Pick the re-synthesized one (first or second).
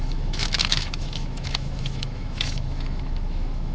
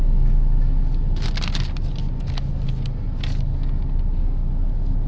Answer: first